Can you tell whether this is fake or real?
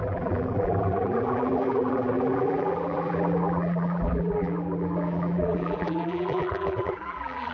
fake